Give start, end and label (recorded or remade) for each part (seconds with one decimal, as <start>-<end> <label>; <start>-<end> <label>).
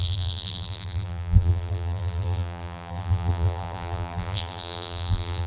0.0-5.5 remade